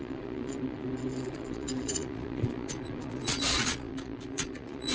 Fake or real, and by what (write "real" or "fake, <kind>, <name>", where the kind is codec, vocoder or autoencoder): fake, vocoder, Vocos